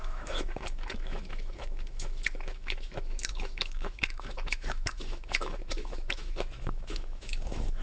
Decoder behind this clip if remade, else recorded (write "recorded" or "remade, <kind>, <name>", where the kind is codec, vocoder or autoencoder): remade, autoencoder, DAC-VAE